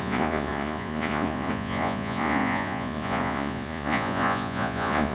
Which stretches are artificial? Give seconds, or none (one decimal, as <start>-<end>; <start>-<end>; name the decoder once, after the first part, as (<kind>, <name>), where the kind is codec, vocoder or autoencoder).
0.0-5.1 (vocoder, Vocos)